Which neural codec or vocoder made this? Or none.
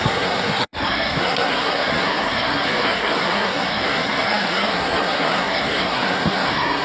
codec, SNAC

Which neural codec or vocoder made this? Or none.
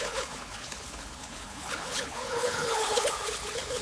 codec, HILCodec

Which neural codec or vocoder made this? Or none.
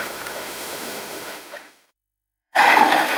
autoencoder, DAC-VAE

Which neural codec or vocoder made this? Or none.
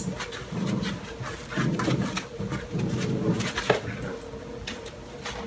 none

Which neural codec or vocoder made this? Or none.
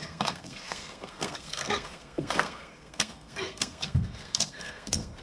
codec, SNAC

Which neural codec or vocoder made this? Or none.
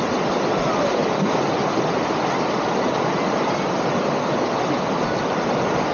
none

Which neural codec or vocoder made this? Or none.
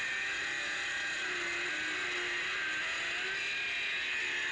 none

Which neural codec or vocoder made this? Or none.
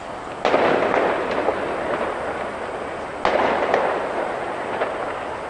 none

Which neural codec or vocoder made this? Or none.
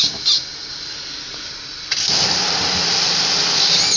none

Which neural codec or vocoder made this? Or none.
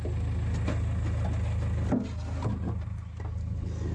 none